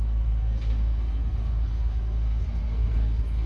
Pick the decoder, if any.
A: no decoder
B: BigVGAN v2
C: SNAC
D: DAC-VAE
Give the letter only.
C